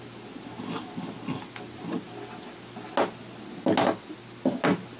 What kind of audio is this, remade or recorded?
recorded